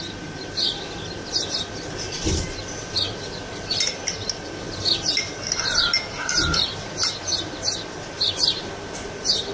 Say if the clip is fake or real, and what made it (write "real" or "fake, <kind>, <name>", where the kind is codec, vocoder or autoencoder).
real